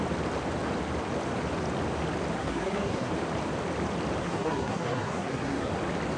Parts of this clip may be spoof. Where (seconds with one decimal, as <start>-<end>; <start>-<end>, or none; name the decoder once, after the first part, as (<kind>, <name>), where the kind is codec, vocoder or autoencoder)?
2.4-3.1 (codec, SNAC); 4.2-5.7